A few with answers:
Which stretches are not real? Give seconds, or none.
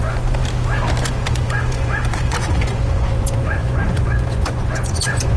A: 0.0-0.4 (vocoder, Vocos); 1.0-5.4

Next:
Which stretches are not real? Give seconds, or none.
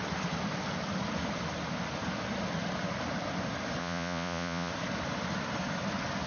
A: 3.8-4.7 (vocoder, Vocos)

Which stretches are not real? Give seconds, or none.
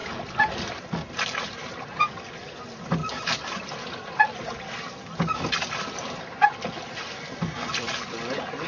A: none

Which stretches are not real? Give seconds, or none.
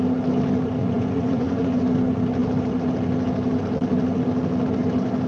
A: 0.8-1.8 (vocoder, Vocos)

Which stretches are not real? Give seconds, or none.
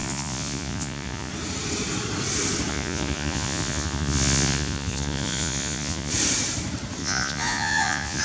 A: 0.0-1.3 (vocoder, Vocos); 2.7-6.1; 7.0-8.2